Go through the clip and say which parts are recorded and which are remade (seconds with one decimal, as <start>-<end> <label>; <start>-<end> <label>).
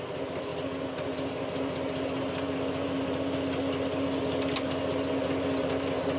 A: 0.0-6.2 recorded